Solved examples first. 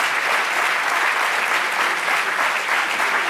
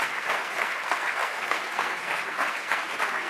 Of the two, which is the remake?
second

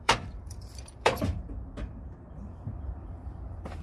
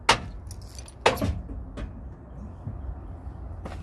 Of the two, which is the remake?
first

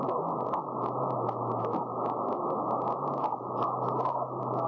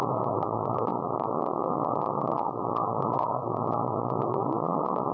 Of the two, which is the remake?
second